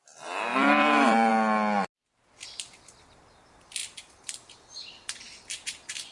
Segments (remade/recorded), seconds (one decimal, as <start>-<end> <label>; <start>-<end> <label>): 0.0-0.5 recorded; 0.5-1.3 remade; 1.3-3.8 recorded; 3.8-6.1 remade